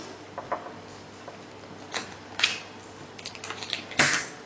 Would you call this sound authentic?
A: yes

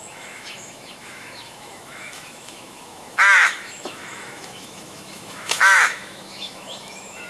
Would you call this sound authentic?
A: no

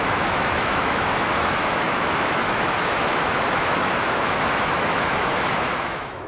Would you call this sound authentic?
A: no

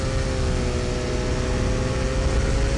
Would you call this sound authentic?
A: yes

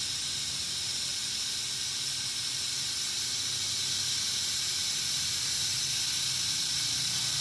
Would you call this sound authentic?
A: yes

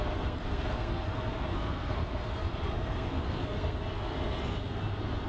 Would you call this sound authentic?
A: no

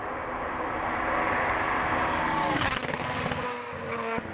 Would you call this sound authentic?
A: yes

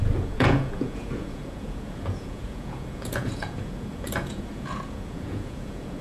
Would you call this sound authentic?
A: no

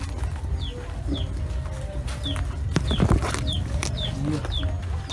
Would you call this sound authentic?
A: yes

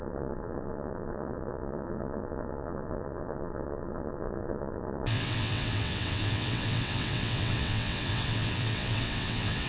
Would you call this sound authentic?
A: no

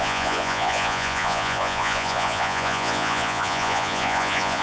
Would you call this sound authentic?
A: no